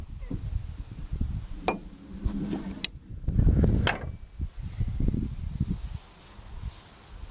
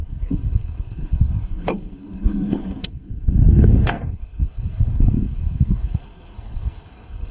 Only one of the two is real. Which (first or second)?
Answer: first